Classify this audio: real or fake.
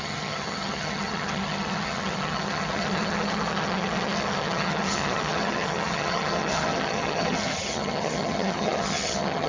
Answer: fake